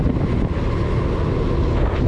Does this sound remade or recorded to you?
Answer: recorded